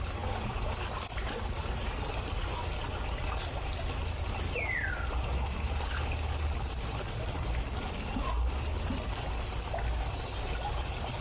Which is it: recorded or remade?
recorded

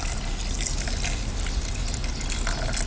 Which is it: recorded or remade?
recorded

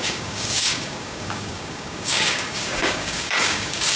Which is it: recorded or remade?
remade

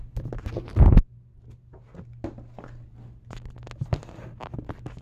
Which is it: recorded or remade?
recorded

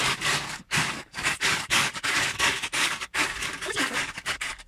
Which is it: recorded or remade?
remade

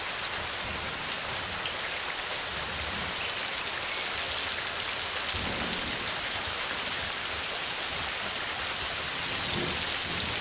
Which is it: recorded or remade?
recorded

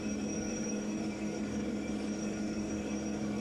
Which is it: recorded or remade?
remade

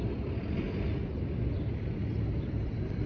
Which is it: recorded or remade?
recorded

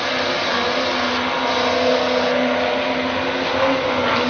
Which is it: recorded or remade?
recorded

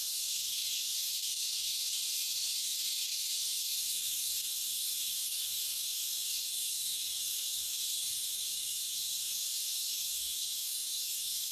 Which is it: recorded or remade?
remade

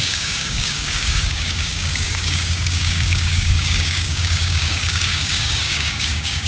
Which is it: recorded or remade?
remade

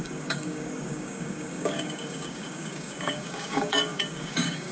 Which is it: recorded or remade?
remade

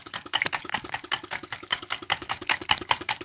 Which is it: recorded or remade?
remade